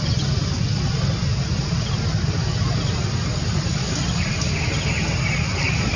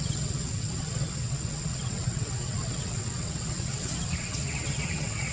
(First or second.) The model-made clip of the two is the second